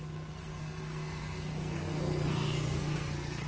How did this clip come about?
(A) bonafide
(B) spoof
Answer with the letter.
B